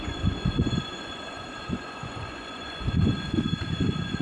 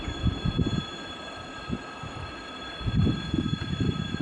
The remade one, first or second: first